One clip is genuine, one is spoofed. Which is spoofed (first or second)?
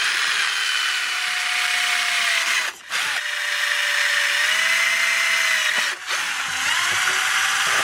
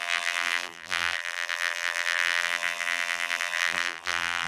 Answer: second